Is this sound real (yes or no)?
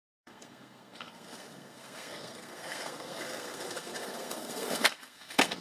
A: no